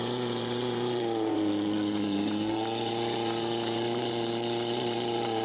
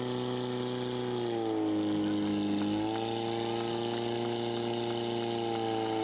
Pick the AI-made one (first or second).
first